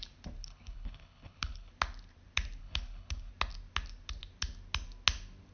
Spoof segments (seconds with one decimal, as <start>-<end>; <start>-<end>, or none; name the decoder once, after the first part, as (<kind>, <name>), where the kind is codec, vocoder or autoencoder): 0.4-1.7 (codec, HILCodec); 2.6-3.3